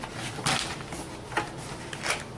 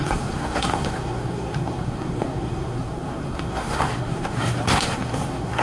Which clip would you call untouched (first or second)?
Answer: first